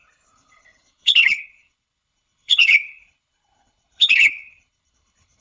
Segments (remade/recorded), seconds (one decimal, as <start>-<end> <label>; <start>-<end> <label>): 0.0-5.4 remade